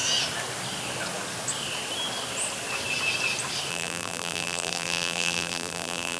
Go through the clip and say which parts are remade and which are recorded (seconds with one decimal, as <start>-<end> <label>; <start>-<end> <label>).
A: 0.0-3.7 recorded; 3.7-6.2 remade